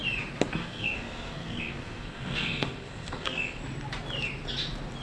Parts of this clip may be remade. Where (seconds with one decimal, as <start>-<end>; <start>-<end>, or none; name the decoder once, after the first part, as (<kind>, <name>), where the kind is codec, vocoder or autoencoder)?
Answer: 0.6-3.6 (codec, SNAC)